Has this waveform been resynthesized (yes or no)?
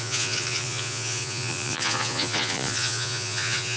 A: yes